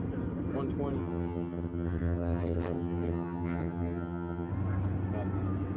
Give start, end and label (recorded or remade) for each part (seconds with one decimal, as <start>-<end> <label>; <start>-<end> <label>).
0.0-1.0 recorded; 1.0-4.5 remade; 4.5-5.8 recorded